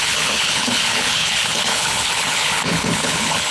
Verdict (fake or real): fake